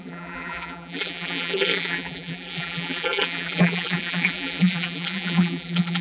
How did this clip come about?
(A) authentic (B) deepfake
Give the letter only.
B